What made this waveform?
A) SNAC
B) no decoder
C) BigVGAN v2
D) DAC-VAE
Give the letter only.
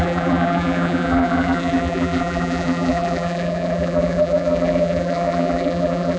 C